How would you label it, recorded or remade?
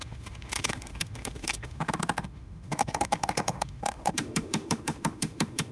remade